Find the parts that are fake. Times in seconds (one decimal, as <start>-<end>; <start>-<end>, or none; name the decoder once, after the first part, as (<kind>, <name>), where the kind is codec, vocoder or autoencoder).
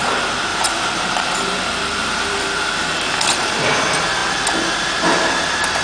0.5-3.7 (vocoder, BigVGAN v2)